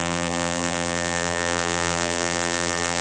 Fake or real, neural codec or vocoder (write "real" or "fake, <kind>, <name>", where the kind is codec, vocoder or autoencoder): fake, vocoder, BigVGAN v2